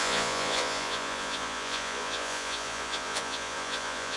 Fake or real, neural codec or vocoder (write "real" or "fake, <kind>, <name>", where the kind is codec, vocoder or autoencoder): fake, vocoder, Vocos